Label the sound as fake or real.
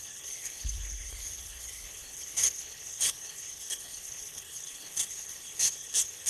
fake